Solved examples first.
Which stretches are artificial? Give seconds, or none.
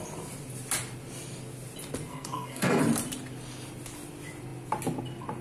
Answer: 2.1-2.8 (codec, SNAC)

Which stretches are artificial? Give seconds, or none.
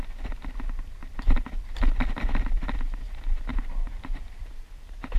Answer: 1.0-3.0 (vocoder, BigVGAN v2); 3.5-4.5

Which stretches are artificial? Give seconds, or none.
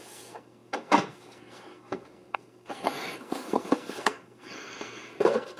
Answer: 0.0-5.6 (codec, SNAC)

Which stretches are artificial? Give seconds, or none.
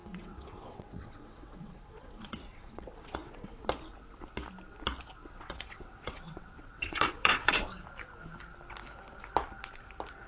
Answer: 0.0-3.6 (vocoder, WaveNeXt); 5.2-7.6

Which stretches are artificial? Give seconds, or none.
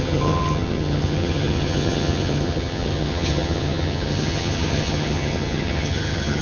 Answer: 0.0-6.4 (vocoder, HiFi-GAN)